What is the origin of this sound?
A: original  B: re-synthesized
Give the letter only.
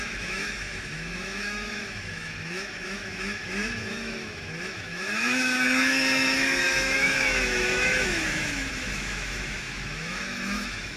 B